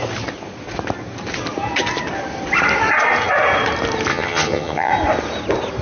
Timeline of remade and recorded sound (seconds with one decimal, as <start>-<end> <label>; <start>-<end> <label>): 0.0-4.1 recorded; 4.1-4.9 remade; 4.9-5.8 recorded